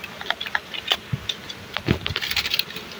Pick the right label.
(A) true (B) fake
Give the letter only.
A